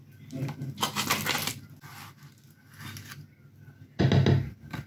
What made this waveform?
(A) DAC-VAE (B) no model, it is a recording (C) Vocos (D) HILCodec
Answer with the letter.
B